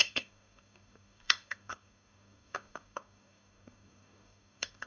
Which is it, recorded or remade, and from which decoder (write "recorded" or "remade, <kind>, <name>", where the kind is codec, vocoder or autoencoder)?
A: remade, codec, DAC